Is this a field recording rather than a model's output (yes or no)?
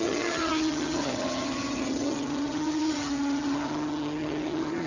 no